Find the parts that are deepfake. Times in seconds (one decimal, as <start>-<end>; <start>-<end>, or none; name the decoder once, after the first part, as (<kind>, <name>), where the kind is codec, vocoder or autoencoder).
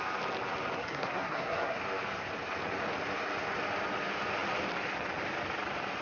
0.8-1.8 (codec, SNAC)